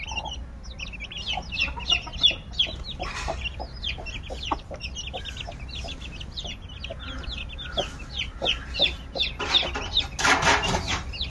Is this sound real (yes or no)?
yes